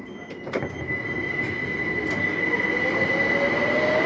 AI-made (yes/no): no